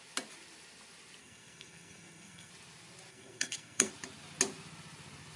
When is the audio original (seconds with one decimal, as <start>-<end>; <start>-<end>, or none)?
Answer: 0.0-1.2; 2.5-3.1; 3.9-5.4